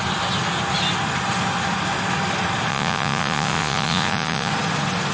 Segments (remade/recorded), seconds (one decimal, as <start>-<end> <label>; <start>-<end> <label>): 0.0-2.7 recorded; 2.7-4.5 remade; 4.5-5.1 recorded